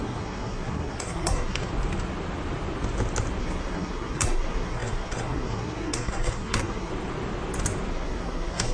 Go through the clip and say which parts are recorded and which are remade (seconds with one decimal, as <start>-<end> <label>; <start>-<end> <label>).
0.0-1.7 remade; 1.7-3.4 recorded; 3.4-6.9 remade; 6.9-7.9 recorded; 7.9-8.7 remade